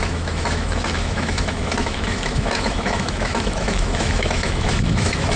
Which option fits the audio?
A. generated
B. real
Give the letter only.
A